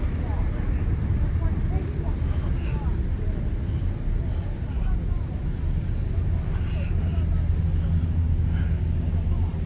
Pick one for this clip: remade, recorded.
recorded